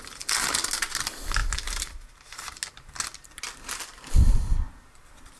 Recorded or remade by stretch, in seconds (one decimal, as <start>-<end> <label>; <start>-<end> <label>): 0.0-5.4 recorded